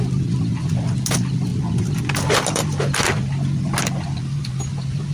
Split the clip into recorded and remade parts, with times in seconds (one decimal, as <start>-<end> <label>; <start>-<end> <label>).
0.0-5.1 recorded

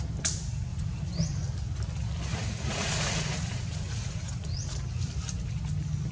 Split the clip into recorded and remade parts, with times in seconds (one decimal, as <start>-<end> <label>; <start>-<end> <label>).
0.0-0.7 recorded; 0.7-1.4 remade; 1.4-2.3 recorded; 2.3-4.8 remade; 4.8-6.1 recorded

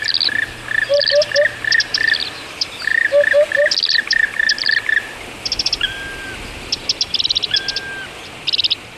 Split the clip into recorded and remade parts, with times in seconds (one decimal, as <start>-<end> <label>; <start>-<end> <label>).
0.0-9.0 recorded

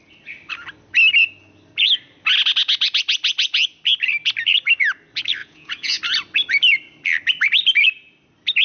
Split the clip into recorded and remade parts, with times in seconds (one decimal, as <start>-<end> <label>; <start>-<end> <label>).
0.0-5.4 recorded; 5.4-6.0 remade; 6.0-8.6 recorded

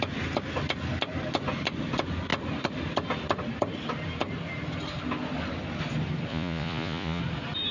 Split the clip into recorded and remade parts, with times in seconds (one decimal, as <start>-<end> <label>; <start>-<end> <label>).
0.0-6.3 recorded; 6.3-7.2 remade; 7.2-7.7 recorded